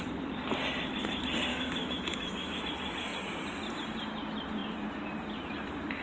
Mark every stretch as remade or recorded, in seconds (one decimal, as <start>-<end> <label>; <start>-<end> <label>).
0.0-1.5 recorded; 1.5-2.6 remade; 2.6-6.0 recorded